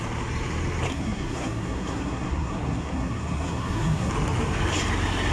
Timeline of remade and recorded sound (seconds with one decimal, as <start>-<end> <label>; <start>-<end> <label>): 0.0-0.9 recorded; 0.9-4.1 remade; 4.1-5.3 recorded